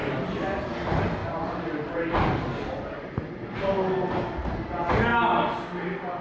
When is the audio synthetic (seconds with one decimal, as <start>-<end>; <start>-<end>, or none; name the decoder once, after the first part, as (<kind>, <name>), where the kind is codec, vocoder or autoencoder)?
0.0-0.7 (vocoder, BigVGAN v2); 1.2-3.1